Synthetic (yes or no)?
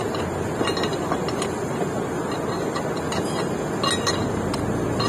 no